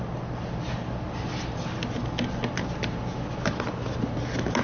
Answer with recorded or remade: recorded